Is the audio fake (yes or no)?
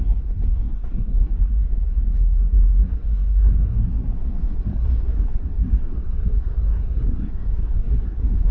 yes